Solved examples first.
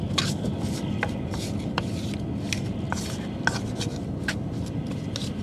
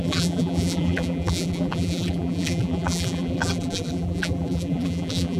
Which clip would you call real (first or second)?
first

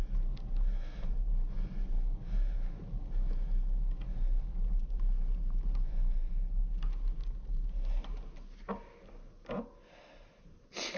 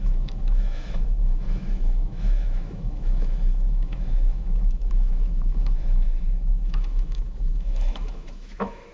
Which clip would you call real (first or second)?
first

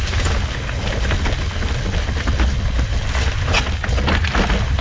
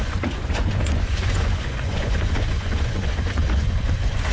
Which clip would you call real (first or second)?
first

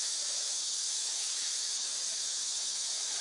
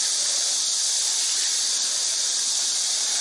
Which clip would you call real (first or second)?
second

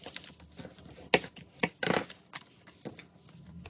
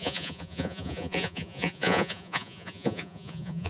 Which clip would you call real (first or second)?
first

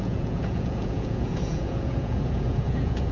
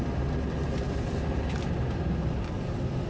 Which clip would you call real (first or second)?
second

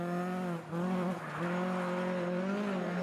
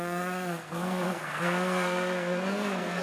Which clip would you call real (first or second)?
first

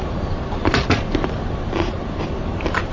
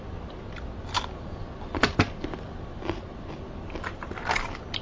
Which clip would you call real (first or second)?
second